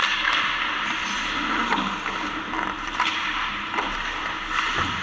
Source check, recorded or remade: recorded